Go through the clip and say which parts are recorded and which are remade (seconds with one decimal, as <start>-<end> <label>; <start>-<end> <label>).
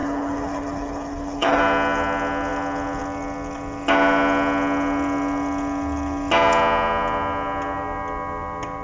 0.0-1.6 remade; 1.6-8.8 recorded